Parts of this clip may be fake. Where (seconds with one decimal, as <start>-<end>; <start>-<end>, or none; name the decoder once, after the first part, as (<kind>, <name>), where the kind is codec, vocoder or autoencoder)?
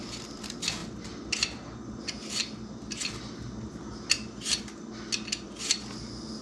none